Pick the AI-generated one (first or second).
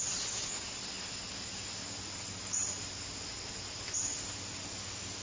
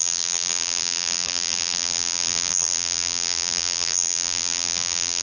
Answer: second